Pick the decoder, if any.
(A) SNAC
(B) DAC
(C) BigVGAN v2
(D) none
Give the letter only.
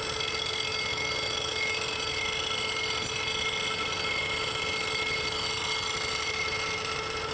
D